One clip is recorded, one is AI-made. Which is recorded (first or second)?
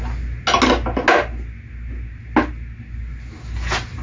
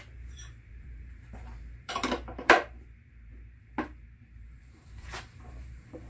first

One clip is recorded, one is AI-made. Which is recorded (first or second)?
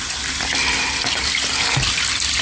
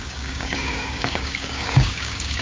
first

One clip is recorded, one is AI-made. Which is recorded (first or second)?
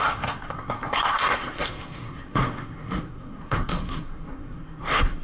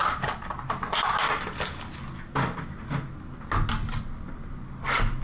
second